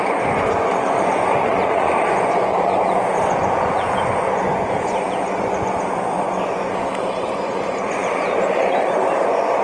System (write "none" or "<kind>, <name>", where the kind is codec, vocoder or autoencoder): vocoder, Vocos